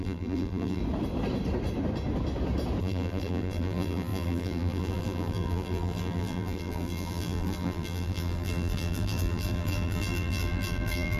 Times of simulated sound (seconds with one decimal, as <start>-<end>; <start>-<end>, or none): 0.0-0.8; 2.8-11.2